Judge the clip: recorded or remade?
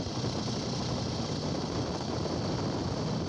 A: recorded